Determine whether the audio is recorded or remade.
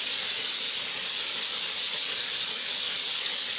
remade